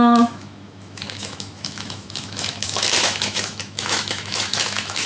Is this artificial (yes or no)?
yes